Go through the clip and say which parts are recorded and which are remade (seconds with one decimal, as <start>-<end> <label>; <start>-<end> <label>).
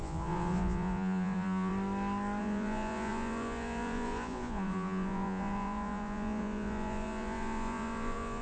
0.0-1.7 remade; 1.7-2.4 recorded; 2.4-8.4 remade